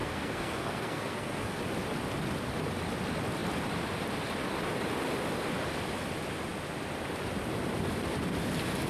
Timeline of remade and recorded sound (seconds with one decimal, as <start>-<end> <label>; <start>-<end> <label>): 0.0-1.6 remade; 1.6-8.9 recorded